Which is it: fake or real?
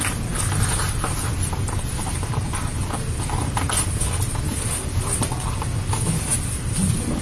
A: real